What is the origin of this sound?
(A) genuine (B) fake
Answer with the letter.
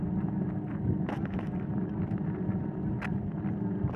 A